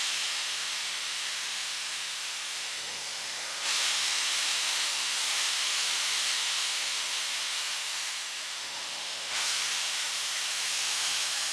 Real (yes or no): no